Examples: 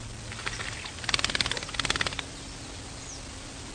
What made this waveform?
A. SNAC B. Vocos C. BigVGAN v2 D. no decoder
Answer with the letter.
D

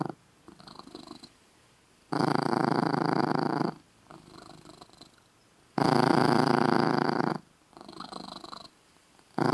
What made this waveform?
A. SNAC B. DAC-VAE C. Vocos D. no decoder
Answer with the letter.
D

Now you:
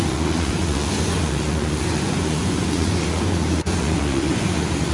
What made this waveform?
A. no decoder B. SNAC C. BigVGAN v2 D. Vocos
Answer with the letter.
D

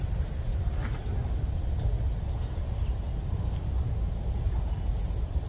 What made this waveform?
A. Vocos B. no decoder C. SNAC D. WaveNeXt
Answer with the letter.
B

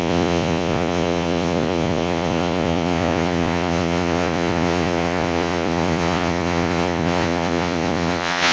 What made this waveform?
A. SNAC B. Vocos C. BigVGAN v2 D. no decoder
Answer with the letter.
B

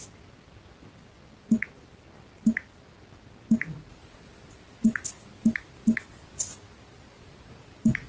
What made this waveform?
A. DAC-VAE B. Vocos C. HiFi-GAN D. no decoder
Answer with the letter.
D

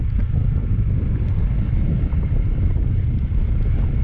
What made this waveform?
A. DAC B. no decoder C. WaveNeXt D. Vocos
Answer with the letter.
B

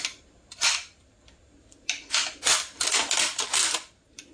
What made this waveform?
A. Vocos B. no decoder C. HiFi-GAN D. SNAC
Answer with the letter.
B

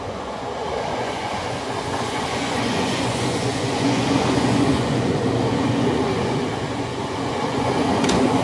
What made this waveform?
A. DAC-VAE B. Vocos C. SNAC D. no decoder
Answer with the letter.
B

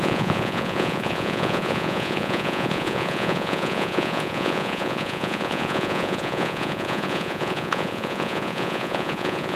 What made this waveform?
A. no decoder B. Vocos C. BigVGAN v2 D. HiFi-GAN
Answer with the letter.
B